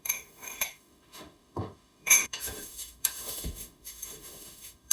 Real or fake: fake